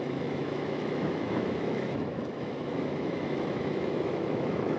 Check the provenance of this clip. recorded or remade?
remade